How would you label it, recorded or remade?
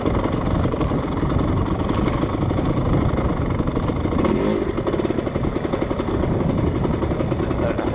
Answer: recorded